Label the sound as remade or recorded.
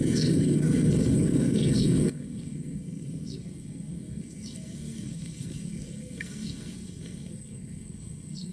remade